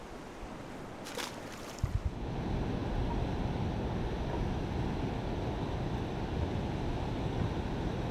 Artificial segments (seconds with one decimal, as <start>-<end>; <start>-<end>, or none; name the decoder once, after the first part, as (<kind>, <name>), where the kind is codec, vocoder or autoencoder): none